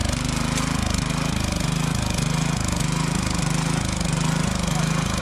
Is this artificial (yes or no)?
no